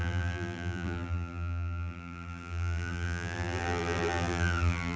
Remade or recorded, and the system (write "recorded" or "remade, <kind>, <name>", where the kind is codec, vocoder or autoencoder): remade, vocoder, BigVGAN v2